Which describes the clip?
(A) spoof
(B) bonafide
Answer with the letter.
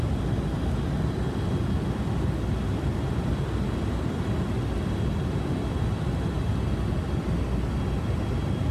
B